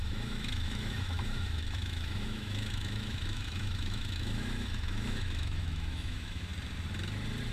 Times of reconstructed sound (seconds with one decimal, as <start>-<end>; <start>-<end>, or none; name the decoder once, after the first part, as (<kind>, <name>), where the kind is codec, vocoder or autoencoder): 0.0-6.5 (autoencoder, DAC-VAE)

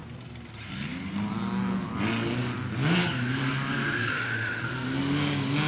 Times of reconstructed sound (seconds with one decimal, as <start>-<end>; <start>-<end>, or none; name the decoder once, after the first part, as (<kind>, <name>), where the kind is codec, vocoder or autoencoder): 4.1-4.6 (autoencoder, DAC-VAE)

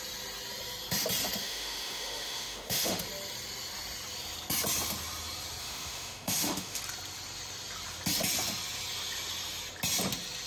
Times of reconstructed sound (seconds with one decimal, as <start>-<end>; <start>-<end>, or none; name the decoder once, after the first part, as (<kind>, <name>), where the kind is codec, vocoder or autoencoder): 1.4-3.0 (autoencoder, DAC-VAE); 5.6-6.8

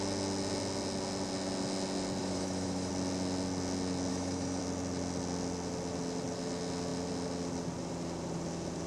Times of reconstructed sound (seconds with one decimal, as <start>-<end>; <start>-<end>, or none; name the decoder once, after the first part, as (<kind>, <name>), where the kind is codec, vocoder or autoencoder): 2.2-2.9 (autoencoder, DAC-VAE); 4.1-4.6

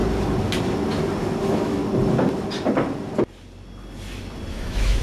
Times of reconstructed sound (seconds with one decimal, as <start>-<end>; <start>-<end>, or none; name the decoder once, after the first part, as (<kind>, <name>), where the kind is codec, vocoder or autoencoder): 1.4-1.8 (autoencoder, DAC-VAE); 4.5-5.0